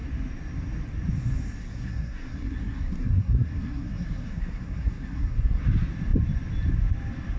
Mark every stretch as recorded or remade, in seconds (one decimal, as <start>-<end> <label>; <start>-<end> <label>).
0.0-1.6 recorded; 1.6-5.6 remade; 5.6-7.4 recorded